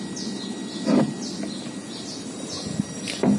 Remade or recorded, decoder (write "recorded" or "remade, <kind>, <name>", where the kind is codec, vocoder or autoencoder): recorded